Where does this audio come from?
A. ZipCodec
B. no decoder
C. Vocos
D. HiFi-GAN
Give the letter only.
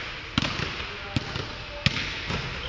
B